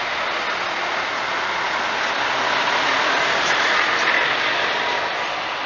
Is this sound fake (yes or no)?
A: no